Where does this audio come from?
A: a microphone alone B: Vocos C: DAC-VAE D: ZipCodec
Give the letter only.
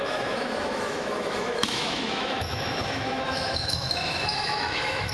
C